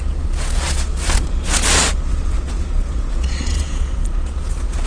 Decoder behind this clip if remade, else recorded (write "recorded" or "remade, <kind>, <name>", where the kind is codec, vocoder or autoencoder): remade, vocoder, Vocos